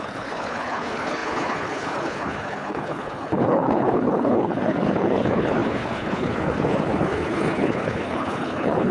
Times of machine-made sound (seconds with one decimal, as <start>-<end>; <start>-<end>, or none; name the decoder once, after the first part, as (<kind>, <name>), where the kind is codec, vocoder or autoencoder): 0.0-8.9 (codec, HILCodec)